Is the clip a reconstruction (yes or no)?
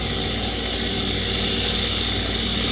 no